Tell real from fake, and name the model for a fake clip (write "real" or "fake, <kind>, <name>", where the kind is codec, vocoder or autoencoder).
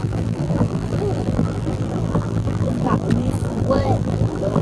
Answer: fake, vocoder, BigVGAN v2